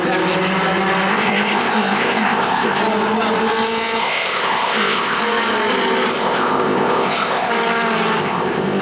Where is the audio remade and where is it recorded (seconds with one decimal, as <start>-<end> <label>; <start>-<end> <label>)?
0.0-1.1 recorded; 1.1-2.8 remade; 2.8-4.0 recorded; 4.0-5.2 remade; 5.2-6.1 recorded; 6.1-7.5 remade; 7.5-8.2 recorded; 8.2-8.8 remade